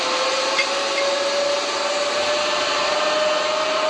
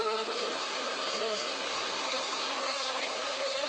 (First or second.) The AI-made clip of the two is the second